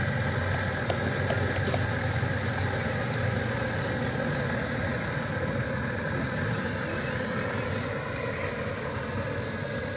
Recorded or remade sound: recorded